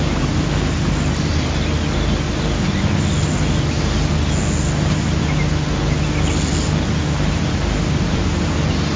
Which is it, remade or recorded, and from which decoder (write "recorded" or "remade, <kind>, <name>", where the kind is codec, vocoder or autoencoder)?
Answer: recorded